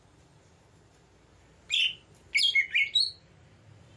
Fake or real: real